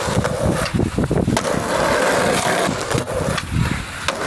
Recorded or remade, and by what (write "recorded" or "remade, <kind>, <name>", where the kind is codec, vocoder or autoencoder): recorded